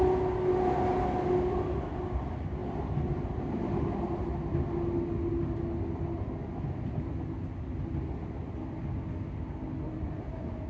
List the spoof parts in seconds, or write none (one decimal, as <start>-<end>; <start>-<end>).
none